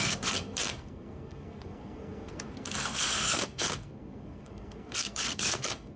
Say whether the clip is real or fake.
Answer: fake